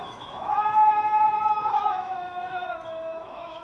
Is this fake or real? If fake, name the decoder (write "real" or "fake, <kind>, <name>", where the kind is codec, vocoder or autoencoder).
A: fake, autoencoder, DAC-VAE